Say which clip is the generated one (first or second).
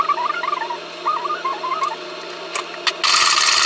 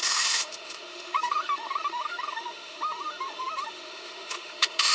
second